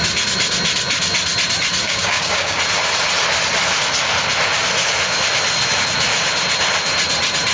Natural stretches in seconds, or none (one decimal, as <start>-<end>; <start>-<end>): 0.0-1.8; 2.6-7.5